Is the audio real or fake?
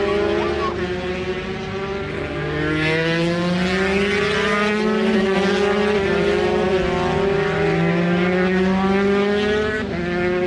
real